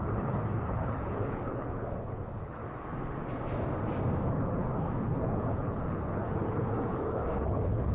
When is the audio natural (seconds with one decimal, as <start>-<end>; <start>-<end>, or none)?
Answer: 2.6-4.3